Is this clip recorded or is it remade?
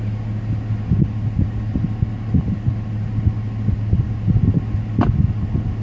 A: recorded